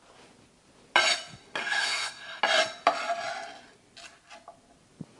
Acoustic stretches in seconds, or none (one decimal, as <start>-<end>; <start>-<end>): 0.0-1.6; 2.4-5.2